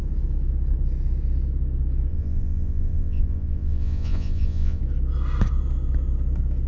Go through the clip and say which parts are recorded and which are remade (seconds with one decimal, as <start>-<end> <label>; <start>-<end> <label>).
0.0-2.1 recorded; 2.1-4.8 remade; 4.8-6.7 recorded